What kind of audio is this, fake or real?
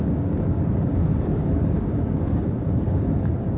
fake